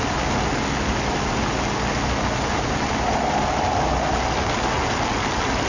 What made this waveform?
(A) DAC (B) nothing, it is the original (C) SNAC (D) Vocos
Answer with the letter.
B